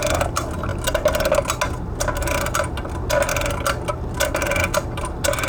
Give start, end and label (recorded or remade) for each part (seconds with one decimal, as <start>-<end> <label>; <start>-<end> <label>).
0.0-5.5 recorded